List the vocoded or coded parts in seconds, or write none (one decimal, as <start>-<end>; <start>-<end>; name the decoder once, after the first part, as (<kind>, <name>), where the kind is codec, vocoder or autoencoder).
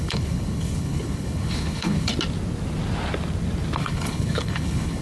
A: 0.0-2.1 (codec, HILCodec); 3.8-5.0